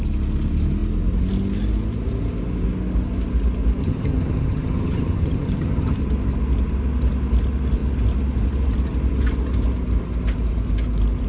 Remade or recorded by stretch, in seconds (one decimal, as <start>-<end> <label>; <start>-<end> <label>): 0.0-3.8 recorded; 3.8-6.0 remade; 6.0-11.3 recorded